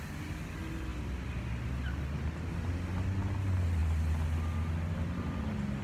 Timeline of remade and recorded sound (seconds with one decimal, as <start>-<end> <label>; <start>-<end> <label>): 0.0-5.8 recorded